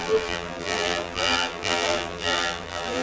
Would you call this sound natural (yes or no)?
no